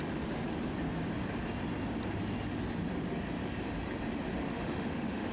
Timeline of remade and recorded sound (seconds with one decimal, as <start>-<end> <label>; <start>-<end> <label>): 0.0-4.4 recorded; 4.4-5.3 remade